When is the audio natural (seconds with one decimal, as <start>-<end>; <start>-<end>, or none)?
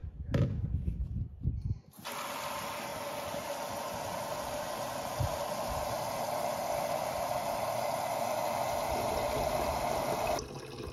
0.0-10.9